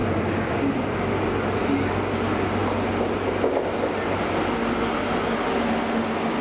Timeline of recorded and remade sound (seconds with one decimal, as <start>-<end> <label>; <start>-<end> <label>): 0.0-0.7 remade; 0.7-6.4 recorded